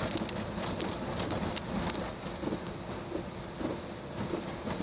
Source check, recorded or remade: recorded